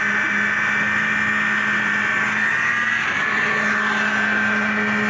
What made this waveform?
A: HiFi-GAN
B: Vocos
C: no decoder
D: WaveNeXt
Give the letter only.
C